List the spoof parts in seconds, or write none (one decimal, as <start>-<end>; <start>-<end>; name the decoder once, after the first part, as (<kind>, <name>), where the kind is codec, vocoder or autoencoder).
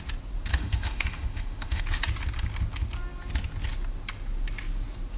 0.5-1.8 (autoencoder, DAC-VAE)